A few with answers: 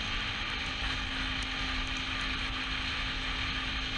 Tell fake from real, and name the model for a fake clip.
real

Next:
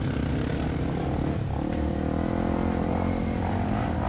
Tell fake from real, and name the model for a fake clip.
real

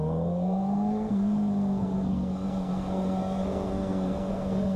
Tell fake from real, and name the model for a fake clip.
fake, codec, SNAC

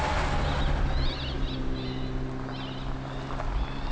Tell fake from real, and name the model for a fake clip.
real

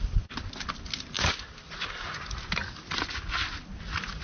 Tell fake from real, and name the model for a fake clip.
real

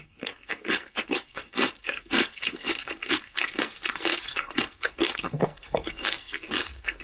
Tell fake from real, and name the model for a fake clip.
fake, codec, SNAC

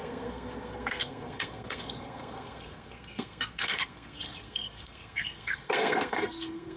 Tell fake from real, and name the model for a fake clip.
fake, codec, SNAC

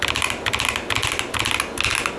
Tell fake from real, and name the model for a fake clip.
real